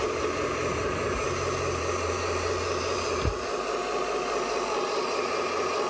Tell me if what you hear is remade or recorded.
recorded